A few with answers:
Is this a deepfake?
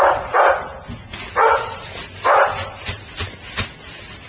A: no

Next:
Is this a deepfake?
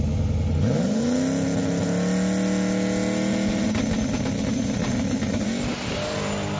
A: no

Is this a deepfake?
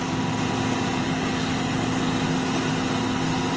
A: no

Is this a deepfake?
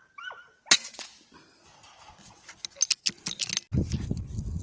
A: no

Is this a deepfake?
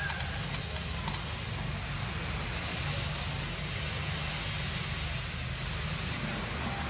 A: no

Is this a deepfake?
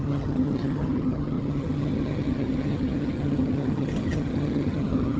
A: yes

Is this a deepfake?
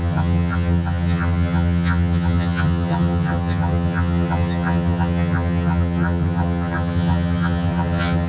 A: yes